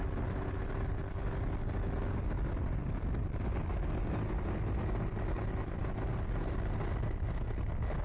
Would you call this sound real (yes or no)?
yes